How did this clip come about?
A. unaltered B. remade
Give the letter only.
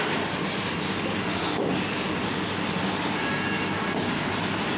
A